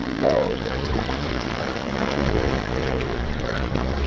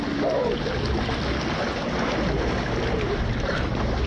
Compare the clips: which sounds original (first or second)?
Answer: second